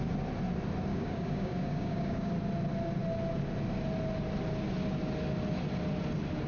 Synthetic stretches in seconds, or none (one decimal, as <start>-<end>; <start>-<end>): 0.9-2.3

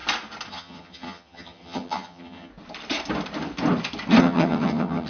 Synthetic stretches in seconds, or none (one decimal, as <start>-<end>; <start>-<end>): 0.5-2.5; 4.2-5.1

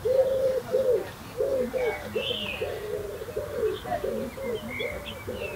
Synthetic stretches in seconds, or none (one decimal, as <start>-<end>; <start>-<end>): none

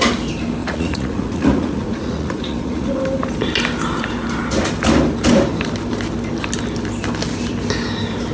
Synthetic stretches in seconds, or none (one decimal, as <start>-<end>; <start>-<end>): 0.6-3.0

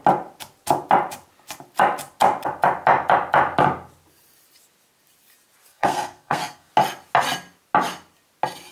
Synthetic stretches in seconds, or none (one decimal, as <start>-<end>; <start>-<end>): 5.7-6.7

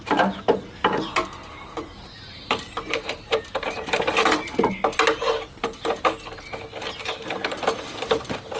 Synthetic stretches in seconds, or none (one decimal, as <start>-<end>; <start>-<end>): 1.4-4.7

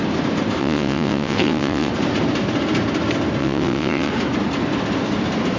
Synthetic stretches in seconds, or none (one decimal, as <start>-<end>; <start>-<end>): 0.6-1.9; 3.4-4.1